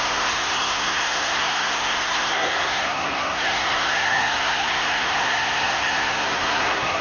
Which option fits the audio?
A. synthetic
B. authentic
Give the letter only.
A